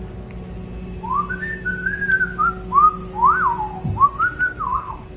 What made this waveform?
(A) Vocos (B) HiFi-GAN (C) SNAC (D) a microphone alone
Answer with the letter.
D